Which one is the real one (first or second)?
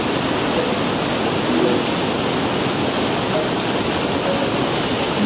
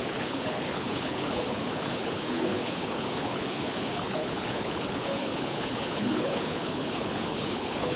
first